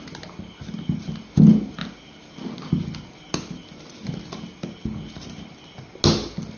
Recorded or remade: recorded